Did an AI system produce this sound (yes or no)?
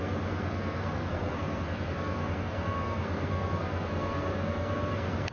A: yes